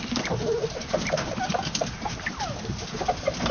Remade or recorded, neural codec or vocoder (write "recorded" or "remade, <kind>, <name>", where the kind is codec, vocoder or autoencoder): recorded